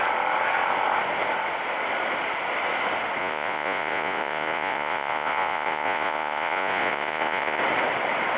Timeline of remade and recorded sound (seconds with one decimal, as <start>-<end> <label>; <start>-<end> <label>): 0.0-3.2 recorded; 3.2-7.6 remade; 7.6-8.4 recorded